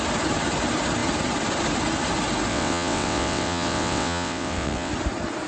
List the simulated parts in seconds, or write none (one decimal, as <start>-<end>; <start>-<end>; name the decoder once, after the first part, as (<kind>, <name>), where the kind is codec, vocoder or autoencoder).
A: 2.5-4.9 (vocoder, WaveNeXt)